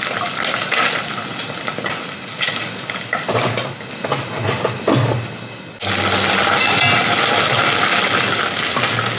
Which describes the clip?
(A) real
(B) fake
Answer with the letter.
A